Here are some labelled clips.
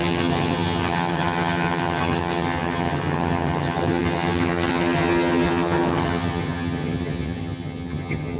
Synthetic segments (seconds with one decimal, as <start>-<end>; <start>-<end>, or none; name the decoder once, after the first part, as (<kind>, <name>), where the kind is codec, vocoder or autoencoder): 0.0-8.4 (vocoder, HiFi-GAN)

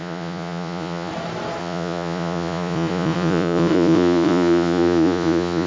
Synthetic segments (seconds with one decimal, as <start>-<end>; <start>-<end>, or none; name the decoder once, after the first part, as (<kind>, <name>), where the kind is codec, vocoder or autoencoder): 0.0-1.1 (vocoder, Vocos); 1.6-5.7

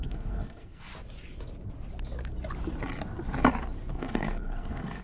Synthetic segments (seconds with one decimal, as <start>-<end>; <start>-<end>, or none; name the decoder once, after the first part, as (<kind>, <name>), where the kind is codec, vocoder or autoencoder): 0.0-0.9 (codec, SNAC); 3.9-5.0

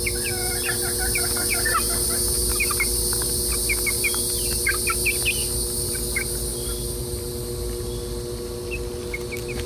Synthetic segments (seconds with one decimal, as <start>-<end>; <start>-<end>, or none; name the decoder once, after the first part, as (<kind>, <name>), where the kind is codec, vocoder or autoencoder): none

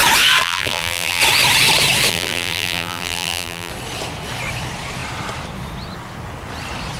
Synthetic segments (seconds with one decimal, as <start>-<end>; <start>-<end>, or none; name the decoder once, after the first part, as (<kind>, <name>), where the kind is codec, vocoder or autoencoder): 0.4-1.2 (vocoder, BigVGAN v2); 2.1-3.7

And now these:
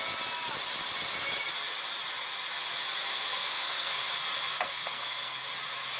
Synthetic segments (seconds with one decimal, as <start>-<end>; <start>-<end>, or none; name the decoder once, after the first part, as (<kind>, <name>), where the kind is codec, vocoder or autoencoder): 3.1-4.0 (codec, SNAC); 4.5-5.5

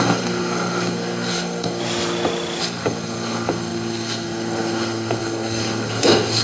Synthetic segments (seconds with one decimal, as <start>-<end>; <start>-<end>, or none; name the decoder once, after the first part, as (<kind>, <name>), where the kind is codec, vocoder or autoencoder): 0.0-1.8 (codec, SNAC); 2.6-6.4